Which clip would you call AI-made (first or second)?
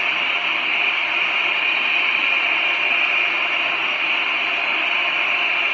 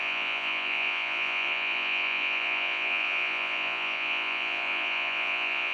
second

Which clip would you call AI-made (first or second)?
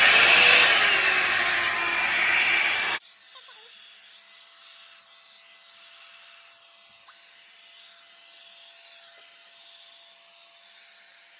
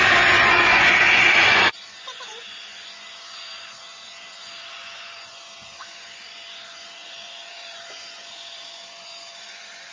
second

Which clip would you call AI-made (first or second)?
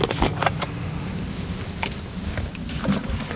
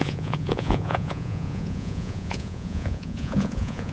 second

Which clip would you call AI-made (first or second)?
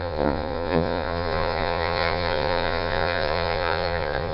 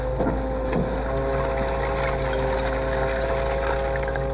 first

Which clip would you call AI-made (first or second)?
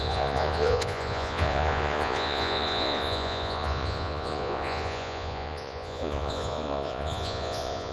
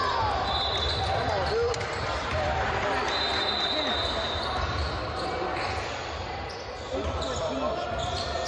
first